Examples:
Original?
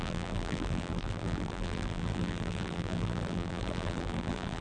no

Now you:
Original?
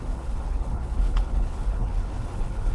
no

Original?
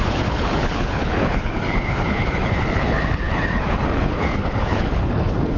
no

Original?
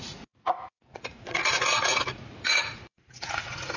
no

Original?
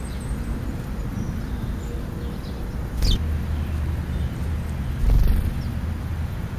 yes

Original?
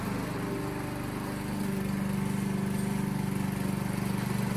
yes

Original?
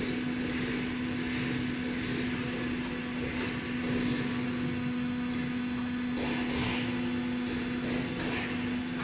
yes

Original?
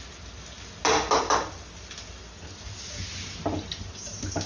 yes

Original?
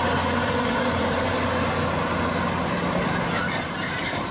yes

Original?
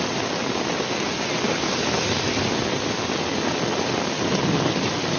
yes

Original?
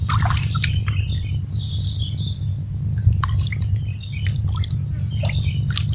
yes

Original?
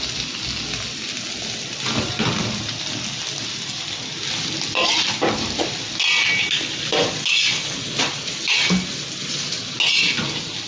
yes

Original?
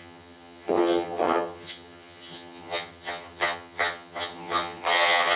no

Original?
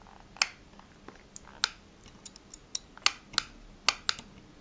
yes